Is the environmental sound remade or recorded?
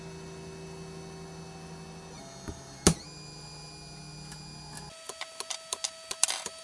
recorded